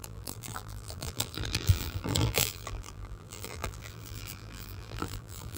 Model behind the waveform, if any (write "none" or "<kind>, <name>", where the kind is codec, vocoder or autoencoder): vocoder, BigVGAN v2